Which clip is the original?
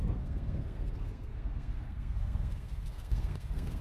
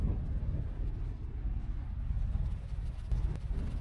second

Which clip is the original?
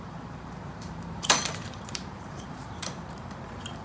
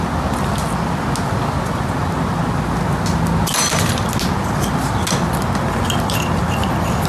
second